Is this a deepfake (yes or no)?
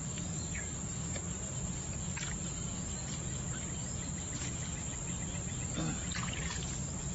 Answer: no